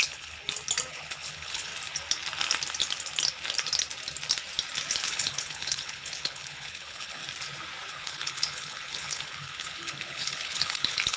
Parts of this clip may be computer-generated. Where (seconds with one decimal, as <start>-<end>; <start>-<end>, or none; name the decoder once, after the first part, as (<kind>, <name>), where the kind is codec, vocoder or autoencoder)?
0.0-0.4 (codec, HILCodec); 0.9-1.7; 4.9-7.2; 7.9-11.2